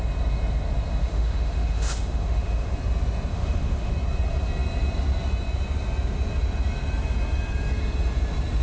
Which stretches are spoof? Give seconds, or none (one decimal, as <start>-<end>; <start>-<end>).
1.0-2.7; 3.3-3.9

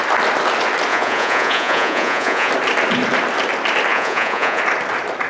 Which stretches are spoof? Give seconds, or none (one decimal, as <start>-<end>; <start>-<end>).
0.9-2.5; 3.9-4.6